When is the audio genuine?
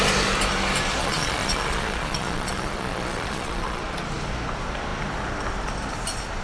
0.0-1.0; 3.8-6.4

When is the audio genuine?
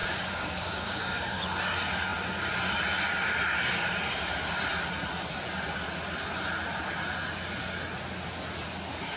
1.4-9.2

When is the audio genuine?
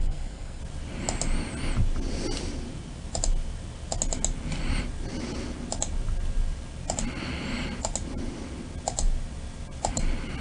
0.6-10.4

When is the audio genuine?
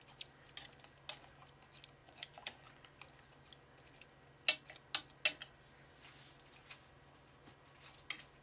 0.0-2.0; 2.9-8.4